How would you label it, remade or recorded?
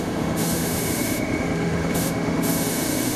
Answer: remade